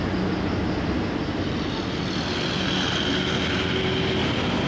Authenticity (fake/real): real